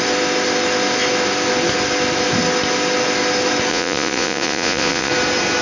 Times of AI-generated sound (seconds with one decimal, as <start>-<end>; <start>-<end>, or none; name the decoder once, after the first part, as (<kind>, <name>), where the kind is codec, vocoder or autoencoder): 3.7-5.1 (vocoder, Vocos)